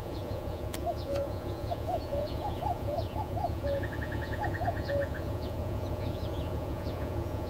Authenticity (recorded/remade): remade